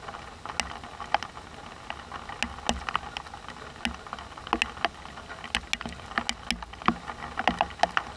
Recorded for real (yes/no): yes